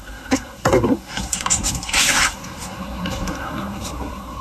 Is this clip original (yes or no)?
no